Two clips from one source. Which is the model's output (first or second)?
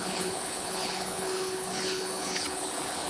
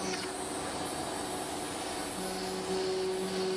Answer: first